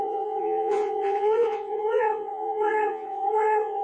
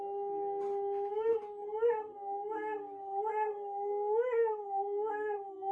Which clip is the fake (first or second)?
first